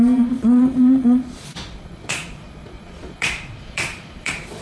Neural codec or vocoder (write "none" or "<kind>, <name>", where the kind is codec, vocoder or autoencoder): vocoder, Vocos